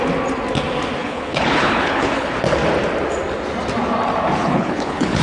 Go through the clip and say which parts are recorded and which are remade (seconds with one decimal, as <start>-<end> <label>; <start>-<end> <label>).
0.0-1.0 recorded; 1.0-2.3 remade; 2.3-4.4 recorded; 4.4-5.2 remade